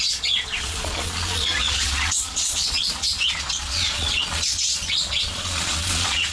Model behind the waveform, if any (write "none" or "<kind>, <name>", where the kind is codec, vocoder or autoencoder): vocoder, Vocos